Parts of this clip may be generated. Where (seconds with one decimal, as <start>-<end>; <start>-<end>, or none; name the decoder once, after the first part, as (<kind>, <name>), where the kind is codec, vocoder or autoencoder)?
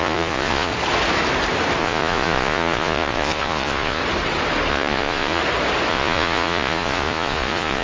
0.0-0.7 (vocoder, Vocos); 1.8-4.0; 4.7-5.4; 5.9-7.8